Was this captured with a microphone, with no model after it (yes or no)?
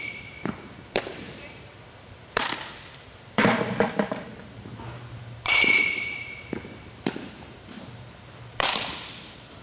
no